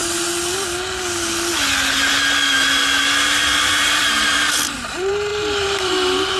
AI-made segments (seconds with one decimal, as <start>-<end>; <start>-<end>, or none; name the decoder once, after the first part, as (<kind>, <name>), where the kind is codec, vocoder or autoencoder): 3.8-6.4 (vocoder, BigVGAN v2)